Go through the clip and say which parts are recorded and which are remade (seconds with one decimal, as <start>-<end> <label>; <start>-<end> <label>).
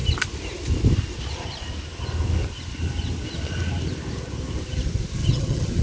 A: 0.0-5.2 recorded; 5.2-5.8 remade